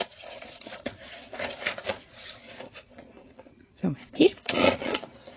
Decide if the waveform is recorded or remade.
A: remade